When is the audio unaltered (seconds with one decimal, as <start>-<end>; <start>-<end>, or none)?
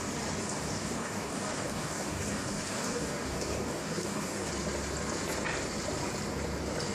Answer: 0.0-0.4; 4.5-6.9